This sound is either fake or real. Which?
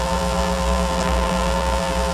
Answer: fake